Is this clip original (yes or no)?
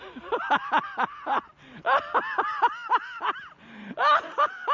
yes